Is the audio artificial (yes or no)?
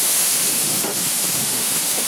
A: yes